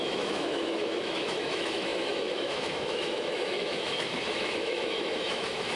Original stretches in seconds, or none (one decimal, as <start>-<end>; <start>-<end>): none